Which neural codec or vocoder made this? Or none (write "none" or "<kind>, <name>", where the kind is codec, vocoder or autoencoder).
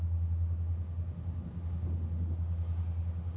none